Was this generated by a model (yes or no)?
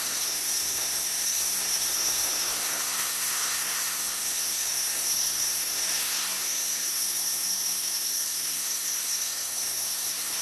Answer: yes